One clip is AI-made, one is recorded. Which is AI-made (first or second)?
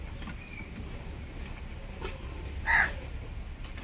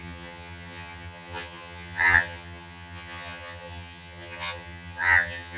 second